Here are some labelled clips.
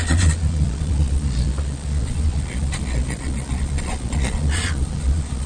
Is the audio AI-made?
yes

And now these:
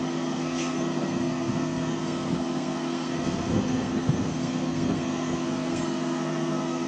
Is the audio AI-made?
yes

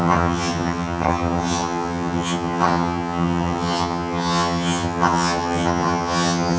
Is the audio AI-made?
yes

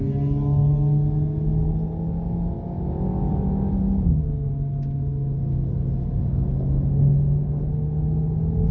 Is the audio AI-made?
no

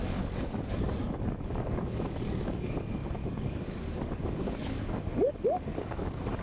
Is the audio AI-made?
yes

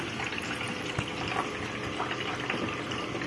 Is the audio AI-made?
no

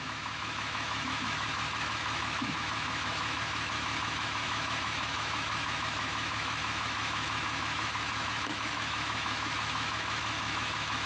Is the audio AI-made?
yes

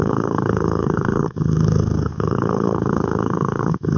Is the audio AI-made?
yes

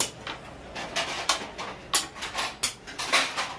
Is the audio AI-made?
no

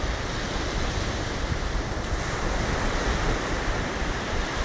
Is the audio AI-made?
no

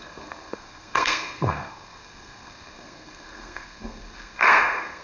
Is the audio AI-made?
yes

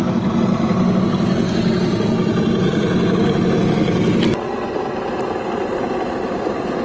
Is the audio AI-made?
no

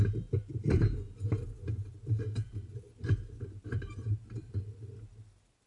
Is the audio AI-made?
yes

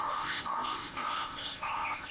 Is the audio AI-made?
yes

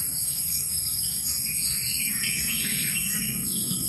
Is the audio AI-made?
yes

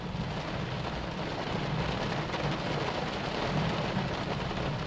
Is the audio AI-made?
no